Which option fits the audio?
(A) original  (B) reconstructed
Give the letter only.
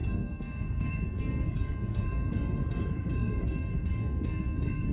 B